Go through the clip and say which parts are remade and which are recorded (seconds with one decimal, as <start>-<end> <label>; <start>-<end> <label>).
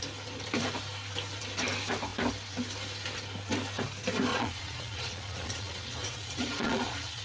0.0-4.3 recorded; 4.3-7.2 remade